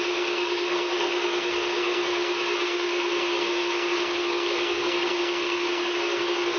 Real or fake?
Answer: fake